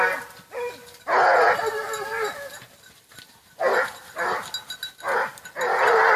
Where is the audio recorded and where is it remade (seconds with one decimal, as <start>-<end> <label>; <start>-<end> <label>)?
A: 0.0-6.2 recorded